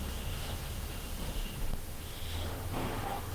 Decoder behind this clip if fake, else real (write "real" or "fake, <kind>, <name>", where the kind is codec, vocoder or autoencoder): fake, autoencoder, DAC-VAE